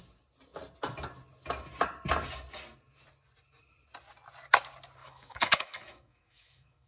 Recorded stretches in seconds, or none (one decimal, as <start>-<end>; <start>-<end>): 0.0-5.0